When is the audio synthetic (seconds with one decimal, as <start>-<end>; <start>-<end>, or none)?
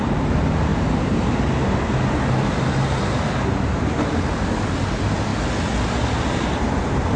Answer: 0.0-5.3